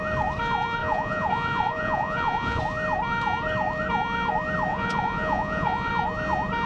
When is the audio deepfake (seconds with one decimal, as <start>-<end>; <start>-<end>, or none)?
0.8-2.6; 4.7-5.9